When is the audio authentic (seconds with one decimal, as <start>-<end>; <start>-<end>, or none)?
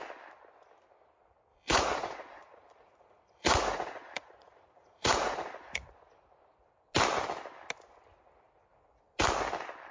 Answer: 0.0-1.5; 5.9-9.9